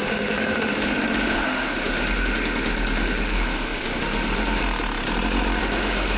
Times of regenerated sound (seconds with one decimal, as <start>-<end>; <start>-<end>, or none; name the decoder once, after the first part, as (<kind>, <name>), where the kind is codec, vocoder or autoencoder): 0.0-4.6 (autoencoder, DAC-VAE); 5.6-6.2